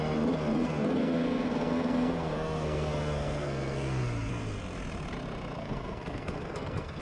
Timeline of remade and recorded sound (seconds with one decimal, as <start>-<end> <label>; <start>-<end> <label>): 0.0-0.5 recorded; 0.5-4.3 remade; 4.3-5.6 recorded; 5.6-7.0 remade